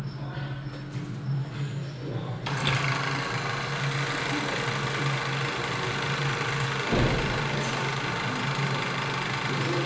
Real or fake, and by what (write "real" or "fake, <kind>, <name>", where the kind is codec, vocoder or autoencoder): real